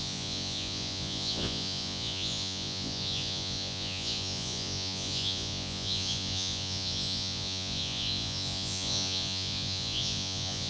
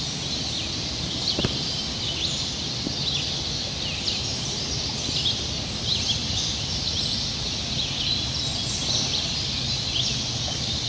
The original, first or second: second